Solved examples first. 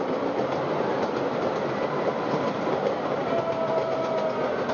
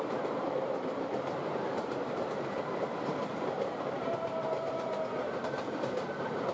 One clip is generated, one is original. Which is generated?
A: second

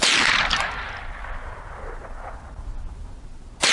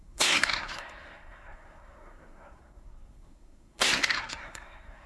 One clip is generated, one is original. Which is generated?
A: second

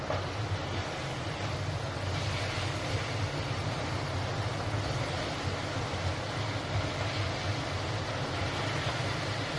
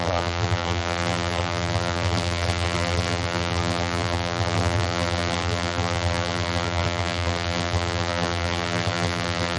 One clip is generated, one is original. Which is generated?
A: second